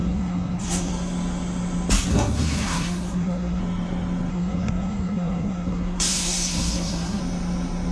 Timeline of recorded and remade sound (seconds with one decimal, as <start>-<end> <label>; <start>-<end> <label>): 0.0-0.9 remade; 0.9-2.1 recorded; 2.1-3.6 remade; 3.6-4.3 recorded; 4.3-7.2 remade; 7.2-7.9 recorded